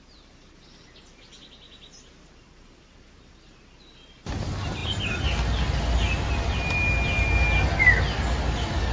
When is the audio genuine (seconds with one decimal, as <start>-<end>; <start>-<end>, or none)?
0.0-8.9